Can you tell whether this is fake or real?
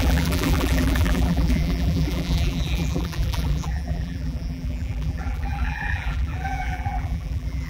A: fake